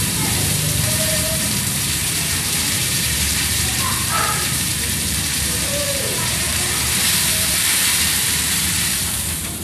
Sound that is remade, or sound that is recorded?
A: remade